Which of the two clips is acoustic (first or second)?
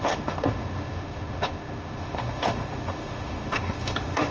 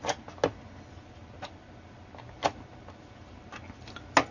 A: second